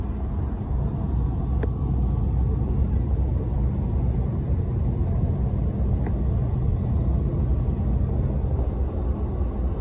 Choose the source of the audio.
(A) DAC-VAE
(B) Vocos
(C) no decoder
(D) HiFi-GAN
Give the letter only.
C